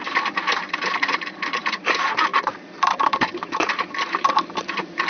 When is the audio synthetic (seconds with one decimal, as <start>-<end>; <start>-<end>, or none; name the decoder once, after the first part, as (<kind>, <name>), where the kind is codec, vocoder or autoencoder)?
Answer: 0.0-5.1 (vocoder, BigVGAN v2)